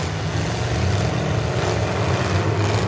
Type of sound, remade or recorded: recorded